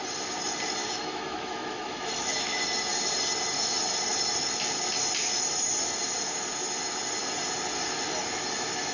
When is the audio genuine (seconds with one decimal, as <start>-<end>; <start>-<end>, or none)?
0.0-0.8; 2.6-8.9